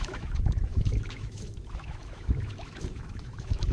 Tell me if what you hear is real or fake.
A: fake